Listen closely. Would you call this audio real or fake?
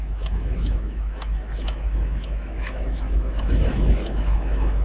fake